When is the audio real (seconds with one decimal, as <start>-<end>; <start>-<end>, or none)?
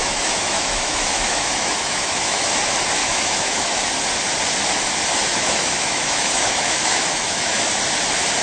2.5-3.0; 3.9-5.3; 7.6-8.4